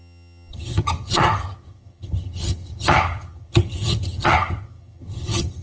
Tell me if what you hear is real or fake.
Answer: fake